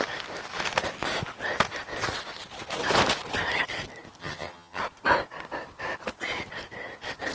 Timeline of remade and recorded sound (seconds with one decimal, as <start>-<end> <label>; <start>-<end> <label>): 0.0-4.2 recorded; 4.2-4.8 remade; 4.8-7.3 recorded